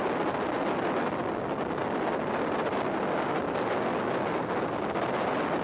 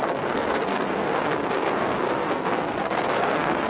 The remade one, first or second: second